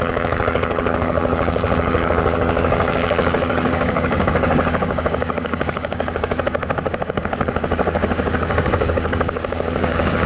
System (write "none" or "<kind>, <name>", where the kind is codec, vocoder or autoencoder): codec, DAC